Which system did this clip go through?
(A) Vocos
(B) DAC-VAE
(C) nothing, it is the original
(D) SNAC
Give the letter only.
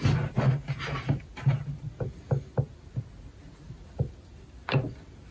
C